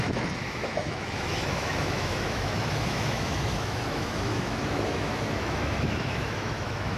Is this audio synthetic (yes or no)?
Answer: yes